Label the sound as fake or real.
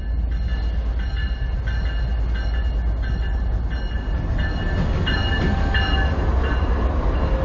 real